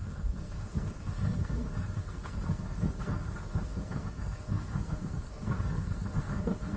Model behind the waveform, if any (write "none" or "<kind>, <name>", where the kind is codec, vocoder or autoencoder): codec, SNAC